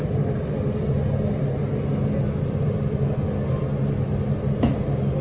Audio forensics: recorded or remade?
recorded